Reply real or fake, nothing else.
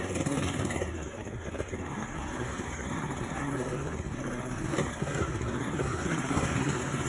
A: fake